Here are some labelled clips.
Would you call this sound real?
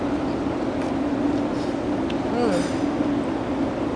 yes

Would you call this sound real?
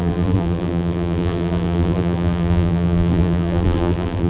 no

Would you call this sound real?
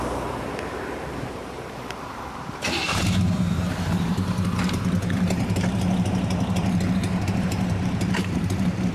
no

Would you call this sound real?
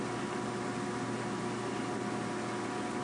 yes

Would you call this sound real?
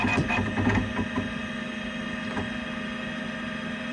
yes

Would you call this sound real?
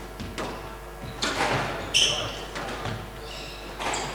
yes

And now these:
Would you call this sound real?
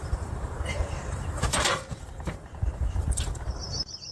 no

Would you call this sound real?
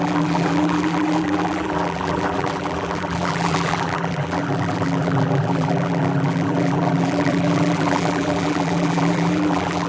no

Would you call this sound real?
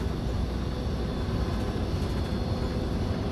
yes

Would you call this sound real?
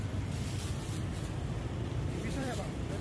no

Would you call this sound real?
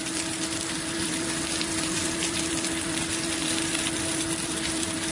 no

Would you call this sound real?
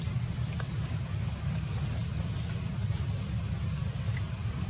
yes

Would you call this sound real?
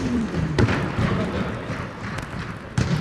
no